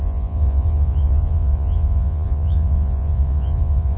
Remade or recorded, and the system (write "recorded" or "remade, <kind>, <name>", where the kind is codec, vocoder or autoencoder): remade, vocoder, Vocos